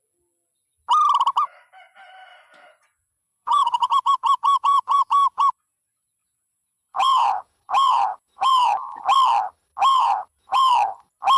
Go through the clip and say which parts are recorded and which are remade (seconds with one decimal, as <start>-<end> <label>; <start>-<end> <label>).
0.0-3.1 recorded; 3.1-5.8 remade; 5.8-6.2 recorded; 6.2-9.0 remade; 9.0-9.9 recorded; 9.9-10.7 remade; 10.7-11.4 recorded